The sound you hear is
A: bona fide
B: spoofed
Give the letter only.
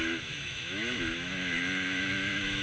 B